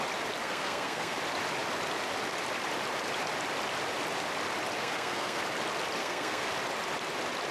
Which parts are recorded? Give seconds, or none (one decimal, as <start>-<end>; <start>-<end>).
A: 0.0-0.4; 1.2-4.8; 5.4-6.0; 6.5-7.5

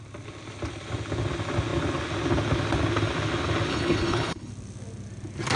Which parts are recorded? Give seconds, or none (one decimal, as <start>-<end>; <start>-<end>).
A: 0.0-3.7; 4.5-5.6